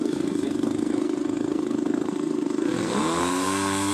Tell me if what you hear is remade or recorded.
remade